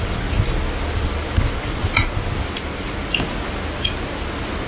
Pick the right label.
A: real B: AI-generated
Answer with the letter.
A